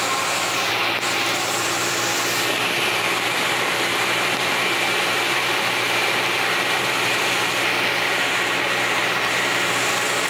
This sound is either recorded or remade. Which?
remade